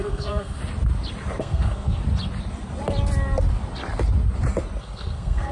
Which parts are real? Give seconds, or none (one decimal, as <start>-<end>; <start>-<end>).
0.6-1.4; 2.0-4.8